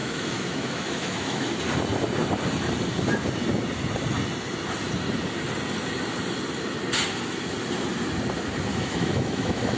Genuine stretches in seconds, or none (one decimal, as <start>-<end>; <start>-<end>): 1.6-8.7